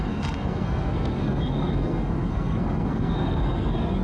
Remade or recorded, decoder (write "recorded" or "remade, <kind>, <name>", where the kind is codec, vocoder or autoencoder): remade, codec, SNAC